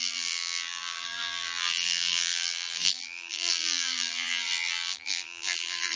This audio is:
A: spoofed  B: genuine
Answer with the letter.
A